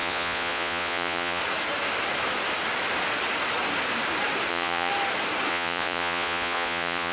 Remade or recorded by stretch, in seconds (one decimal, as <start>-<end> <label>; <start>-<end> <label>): 0.0-1.4 remade; 1.4-4.5 recorded; 4.5-4.9 remade; 4.9-5.5 recorded; 5.5-7.1 remade